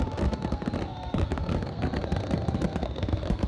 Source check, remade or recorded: remade